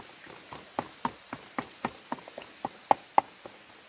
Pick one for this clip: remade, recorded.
recorded